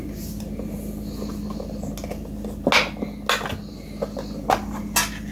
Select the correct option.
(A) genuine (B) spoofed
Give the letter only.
A